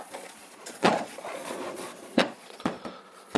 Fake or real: fake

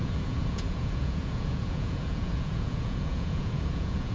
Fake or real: fake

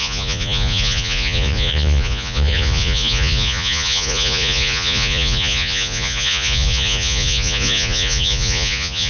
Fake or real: fake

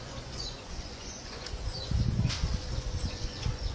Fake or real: fake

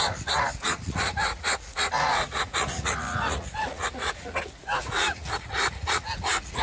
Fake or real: fake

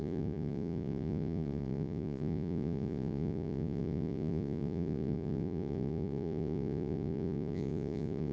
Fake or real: fake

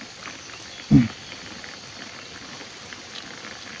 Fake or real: real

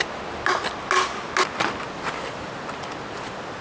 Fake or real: real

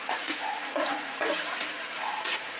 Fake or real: fake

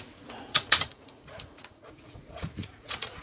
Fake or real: fake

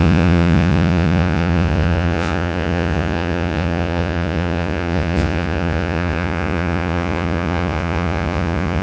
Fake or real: fake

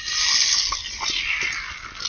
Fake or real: real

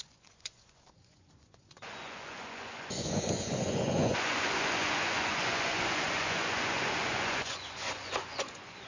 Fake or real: fake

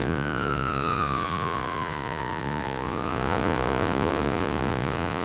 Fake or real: fake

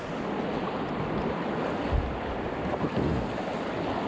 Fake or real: real